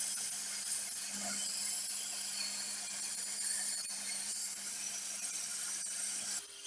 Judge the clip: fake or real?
real